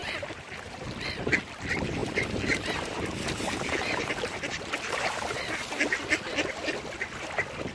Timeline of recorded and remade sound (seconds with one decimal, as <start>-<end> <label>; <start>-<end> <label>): 0.0-0.7 remade; 0.7-2.0 recorded; 2.0-5.5 remade; 5.5-7.7 recorded

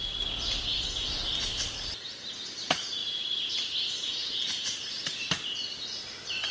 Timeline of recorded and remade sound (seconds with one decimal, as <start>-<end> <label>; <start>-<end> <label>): 0.0-6.5 recorded

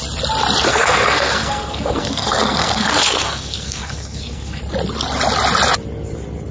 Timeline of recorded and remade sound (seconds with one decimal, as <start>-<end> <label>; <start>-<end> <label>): 0.0-0.7 recorded; 0.7-4.6 remade; 4.6-6.5 recorded